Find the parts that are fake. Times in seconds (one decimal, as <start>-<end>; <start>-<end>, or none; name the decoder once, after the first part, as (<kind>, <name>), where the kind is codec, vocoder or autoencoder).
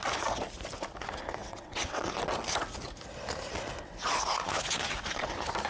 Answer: 1.4-2.1 (vocoder, WaveNeXt)